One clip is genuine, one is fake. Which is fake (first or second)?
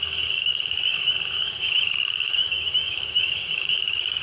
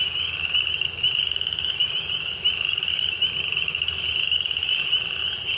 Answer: first